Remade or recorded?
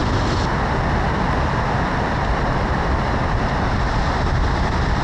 recorded